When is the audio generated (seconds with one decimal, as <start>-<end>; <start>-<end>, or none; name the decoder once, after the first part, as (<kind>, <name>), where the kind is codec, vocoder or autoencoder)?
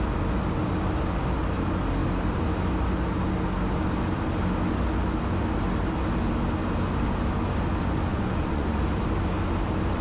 8.1-8.8 (vocoder, Vocos)